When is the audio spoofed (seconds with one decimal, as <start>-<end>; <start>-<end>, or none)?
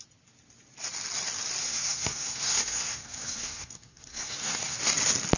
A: 1.6-4.8